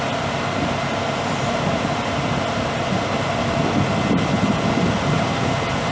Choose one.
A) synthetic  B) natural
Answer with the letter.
B